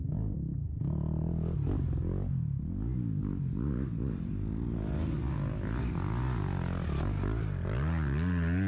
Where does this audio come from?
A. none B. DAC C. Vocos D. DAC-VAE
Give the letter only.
A